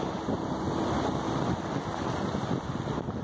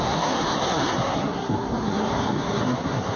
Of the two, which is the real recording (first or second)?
first